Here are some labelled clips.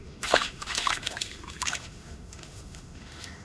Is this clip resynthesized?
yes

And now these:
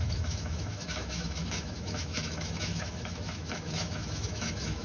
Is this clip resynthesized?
yes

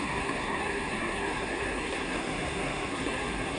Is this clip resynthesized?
yes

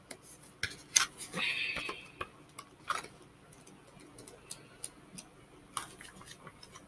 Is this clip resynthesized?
no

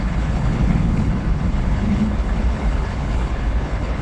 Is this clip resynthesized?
yes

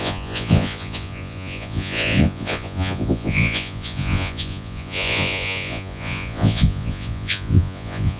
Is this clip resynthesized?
yes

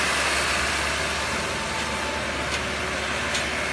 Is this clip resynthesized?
no